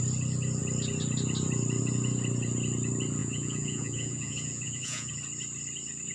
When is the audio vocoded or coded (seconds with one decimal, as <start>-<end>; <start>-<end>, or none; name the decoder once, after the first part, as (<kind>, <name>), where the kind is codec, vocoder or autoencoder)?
3.2-5.1 (vocoder, Vocos)

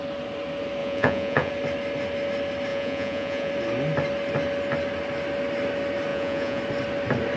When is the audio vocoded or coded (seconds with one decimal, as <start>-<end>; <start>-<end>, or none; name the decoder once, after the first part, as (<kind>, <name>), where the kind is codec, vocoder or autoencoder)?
0.8-1.5 (vocoder, Vocos); 2.7-3.5; 6.1-6.6